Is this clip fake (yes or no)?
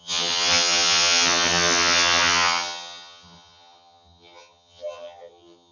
yes